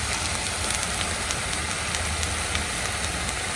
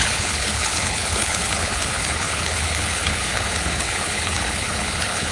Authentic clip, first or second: first